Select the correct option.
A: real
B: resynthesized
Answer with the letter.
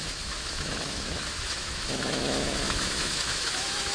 B